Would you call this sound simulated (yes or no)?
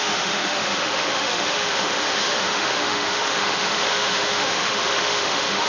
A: yes